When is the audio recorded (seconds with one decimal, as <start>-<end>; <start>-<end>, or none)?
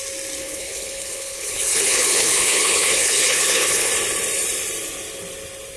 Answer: 0.0-0.4; 3.9-5.8